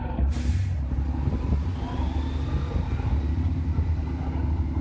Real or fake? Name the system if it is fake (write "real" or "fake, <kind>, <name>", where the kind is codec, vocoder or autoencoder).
real